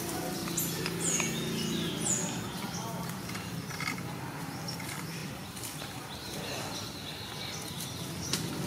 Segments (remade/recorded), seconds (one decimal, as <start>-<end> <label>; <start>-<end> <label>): 0.0-8.7 recorded